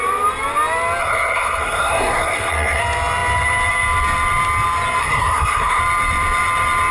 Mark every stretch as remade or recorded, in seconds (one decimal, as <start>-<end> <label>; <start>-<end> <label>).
0.0-1.0 recorded; 1.0-2.8 remade; 2.8-5.0 recorded; 5.0-5.8 remade; 5.8-6.9 recorded